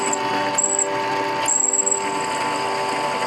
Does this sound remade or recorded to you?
recorded